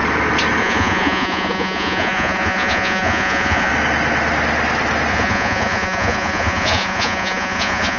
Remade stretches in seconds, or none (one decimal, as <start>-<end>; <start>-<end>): 0.6-3.7; 5.1-8.0